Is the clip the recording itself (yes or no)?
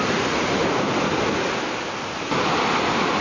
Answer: yes